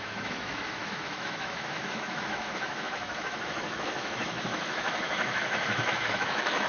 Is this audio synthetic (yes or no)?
yes